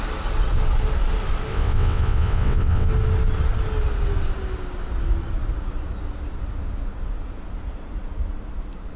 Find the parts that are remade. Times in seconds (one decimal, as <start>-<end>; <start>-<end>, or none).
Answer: 1.5-2.9